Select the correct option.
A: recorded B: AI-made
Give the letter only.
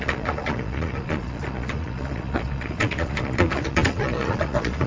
B